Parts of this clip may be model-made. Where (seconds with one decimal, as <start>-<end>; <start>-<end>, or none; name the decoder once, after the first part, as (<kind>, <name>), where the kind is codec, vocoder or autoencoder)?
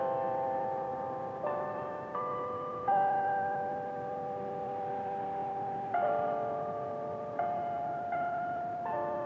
0.9-1.9 (vocoder, BigVGAN v2)